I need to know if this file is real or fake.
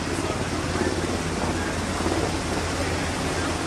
real